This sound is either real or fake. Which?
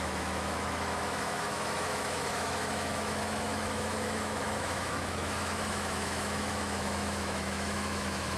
fake